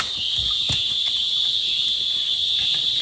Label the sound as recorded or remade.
recorded